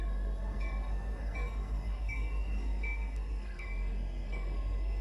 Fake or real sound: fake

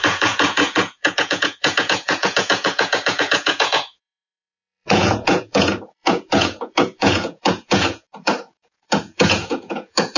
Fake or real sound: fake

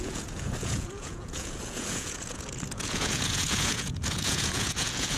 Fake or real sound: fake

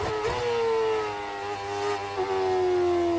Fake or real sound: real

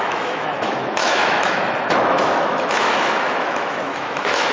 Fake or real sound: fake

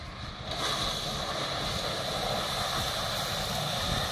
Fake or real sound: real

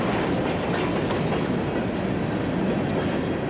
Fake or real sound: real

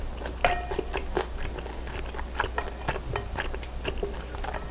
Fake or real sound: real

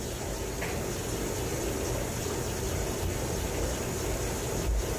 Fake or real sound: real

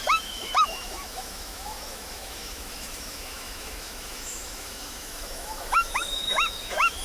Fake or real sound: fake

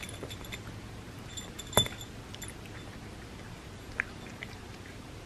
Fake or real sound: real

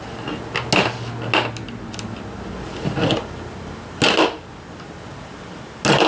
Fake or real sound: real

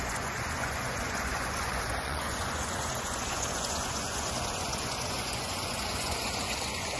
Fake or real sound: fake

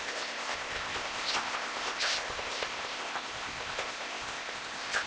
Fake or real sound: fake